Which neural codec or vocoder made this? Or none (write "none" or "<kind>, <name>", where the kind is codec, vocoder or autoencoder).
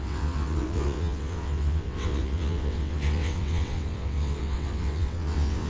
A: vocoder, WaveNeXt